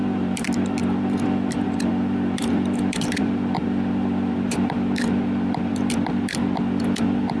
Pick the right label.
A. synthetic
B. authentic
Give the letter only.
A